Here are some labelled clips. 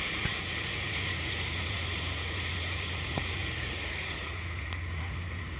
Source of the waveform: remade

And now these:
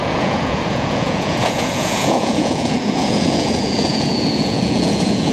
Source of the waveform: remade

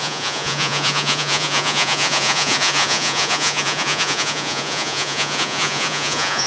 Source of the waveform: remade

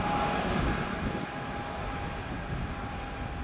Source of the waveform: recorded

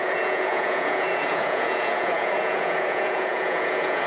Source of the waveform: remade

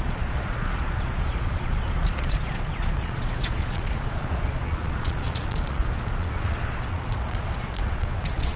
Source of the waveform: remade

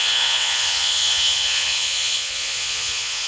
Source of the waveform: remade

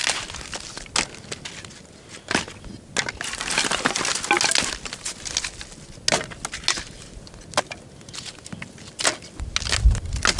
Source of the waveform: recorded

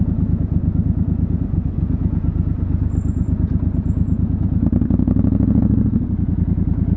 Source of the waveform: remade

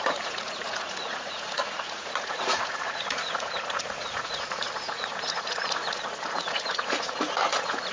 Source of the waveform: remade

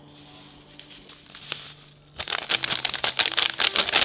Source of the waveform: recorded